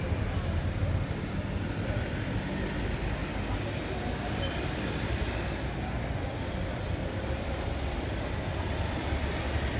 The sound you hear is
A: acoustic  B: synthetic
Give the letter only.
A